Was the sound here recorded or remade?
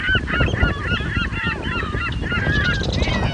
recorded